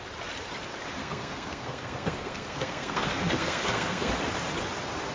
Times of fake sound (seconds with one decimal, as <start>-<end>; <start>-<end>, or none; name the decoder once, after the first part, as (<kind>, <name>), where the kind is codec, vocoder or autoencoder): 1.0-4.1 (codec, SNAC)